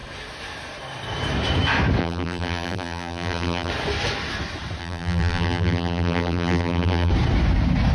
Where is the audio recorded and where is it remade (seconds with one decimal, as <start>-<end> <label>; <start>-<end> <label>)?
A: 0.0-2.0 recorded; 2.0-3.7 remade; 3.7-4.8 recorded; 4.8-7.1 remade; 7.1-7.9 recorded